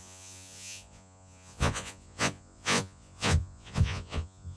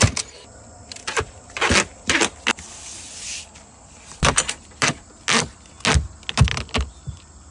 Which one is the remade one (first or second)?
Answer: first